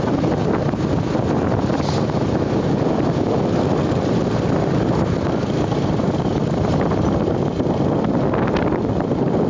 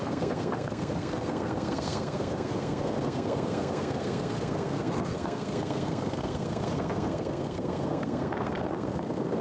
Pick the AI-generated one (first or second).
second